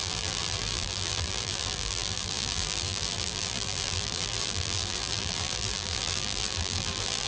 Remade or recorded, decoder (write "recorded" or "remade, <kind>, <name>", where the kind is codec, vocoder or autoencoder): remade, vocoder, BigVGAN v2